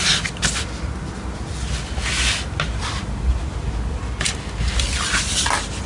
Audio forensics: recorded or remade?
recorded